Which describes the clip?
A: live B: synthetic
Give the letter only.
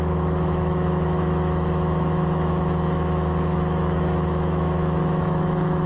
B